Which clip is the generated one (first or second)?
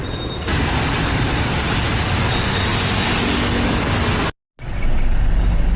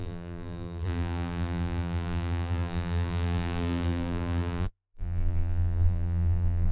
second